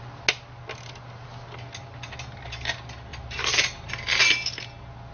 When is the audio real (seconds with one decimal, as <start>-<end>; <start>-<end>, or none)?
0.0-3.1; 3.9-5.1